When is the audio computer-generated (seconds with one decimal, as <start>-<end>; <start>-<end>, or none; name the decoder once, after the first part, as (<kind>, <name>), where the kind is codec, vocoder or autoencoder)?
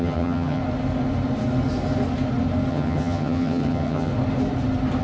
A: 0.0-0.6 (vocoder, HiFi-GAN); 2.7-4.1